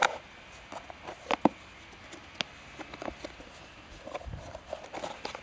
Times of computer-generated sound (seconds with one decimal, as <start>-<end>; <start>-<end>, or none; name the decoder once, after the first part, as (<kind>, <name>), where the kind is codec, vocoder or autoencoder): none